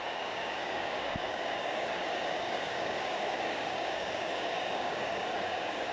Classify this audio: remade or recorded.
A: remade